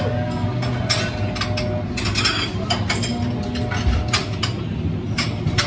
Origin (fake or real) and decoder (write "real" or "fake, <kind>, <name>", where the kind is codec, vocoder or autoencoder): real